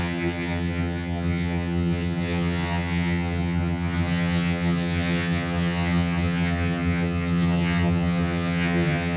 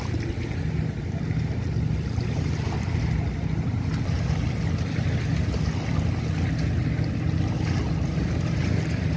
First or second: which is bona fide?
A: second